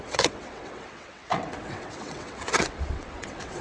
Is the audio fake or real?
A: fake